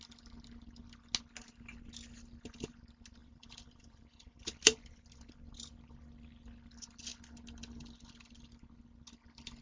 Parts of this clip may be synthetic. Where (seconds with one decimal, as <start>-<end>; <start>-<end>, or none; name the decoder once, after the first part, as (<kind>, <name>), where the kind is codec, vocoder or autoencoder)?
3.2-4.3 (vocoder, BigVGAN v2)